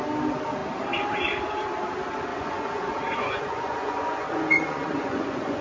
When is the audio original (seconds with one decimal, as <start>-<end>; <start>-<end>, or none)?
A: 0.0-2.3